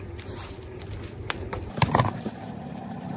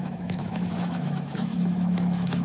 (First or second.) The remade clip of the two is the second